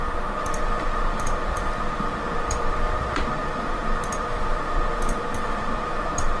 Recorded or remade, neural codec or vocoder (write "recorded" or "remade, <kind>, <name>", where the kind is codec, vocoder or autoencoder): remade, vocoder, BigVGAN v2